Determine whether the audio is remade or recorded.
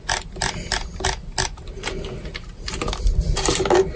recorded